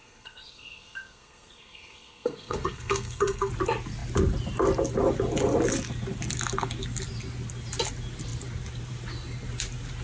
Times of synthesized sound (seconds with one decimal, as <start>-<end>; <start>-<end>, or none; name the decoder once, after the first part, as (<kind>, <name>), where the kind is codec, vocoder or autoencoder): 0.0-3.5 (codec, SNAC)